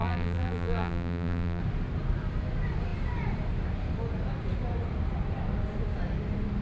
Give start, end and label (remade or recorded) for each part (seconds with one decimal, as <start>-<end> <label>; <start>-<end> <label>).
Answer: 0.0-1.6 remade; 1.6-6.6 recorded

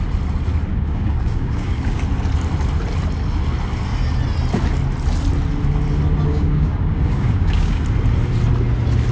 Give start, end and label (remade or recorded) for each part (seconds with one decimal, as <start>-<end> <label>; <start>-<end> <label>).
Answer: 0.0-0.7 recorded; 0.7-2.0 remade; 2.0-6.3 recorded; 6.3-7.8 remade; 7.8-9.1 recorded

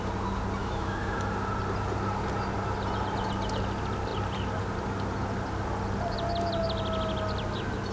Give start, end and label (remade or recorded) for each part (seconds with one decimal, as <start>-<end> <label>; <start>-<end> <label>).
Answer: 0.0-0.6 recorded; 0.6-1.2 remade; 1.2-7.9 recorded

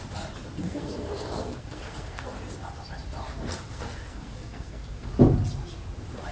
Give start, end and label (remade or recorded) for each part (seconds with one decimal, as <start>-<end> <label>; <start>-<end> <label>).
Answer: 0.0-0.6 recorded; 0.6-2.3 remade; 2.3-3.3 recorded; 3.3-5.1 remade; 5.1-6.3 recorded

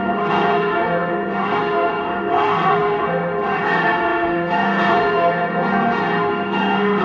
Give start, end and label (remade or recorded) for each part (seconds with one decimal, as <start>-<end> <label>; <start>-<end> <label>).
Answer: 0.0-7.0 remade

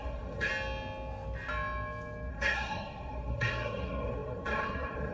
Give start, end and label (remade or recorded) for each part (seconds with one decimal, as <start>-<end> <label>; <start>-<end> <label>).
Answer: 0.0-0.5 remade; 0.5-2.3 recorded; 2.3-5.1 remade

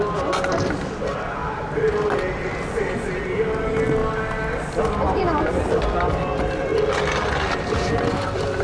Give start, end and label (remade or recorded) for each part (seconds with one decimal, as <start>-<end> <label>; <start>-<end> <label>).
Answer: 0.0-8.6 recorded